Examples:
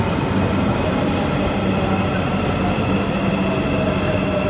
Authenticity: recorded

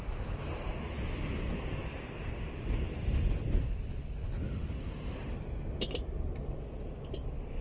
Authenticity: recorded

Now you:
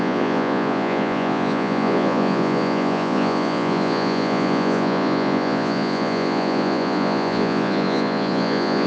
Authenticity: remade